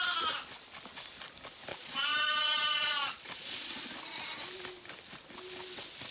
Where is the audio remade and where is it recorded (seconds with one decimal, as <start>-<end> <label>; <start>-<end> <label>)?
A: 0.0-1.7 recorded; 1.7-3.8 remade; 3.8-6.1 recorded